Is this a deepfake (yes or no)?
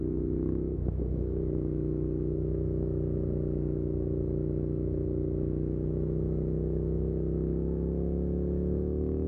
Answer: yes